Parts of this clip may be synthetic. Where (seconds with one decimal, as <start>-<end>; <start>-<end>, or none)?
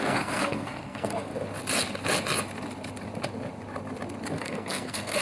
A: 0.0-1.3; 4.4-5.2